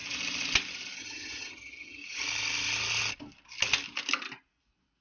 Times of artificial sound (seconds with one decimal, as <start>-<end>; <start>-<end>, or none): 1.0-2.0